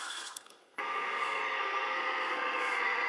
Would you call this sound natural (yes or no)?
no